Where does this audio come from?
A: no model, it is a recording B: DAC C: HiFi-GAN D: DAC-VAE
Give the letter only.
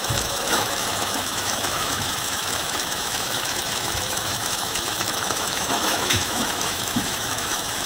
D